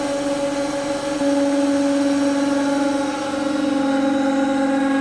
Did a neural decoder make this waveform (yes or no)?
no